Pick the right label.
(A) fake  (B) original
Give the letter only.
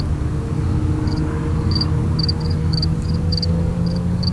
A